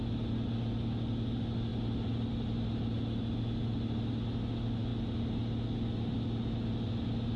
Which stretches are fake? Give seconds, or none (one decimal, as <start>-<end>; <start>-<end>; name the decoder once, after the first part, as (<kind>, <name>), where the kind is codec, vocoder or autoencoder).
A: none